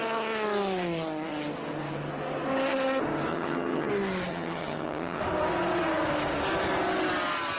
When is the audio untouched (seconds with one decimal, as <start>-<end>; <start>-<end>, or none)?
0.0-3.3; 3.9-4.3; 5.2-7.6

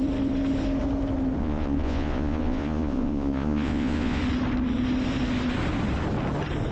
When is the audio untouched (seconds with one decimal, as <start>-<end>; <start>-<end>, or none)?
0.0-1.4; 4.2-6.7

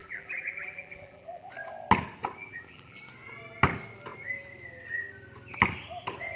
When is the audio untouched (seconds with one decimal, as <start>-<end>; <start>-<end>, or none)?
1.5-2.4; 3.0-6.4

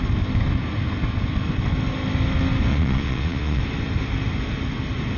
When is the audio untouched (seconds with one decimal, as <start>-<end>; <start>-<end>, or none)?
0.0-2.7; 3.6-5.2

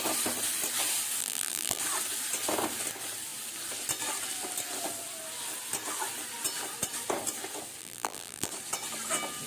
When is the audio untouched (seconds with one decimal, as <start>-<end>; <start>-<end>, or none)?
0.0-1.2; 1.8-7.8; 8.5-9.5